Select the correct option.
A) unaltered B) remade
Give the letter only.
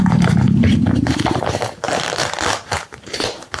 B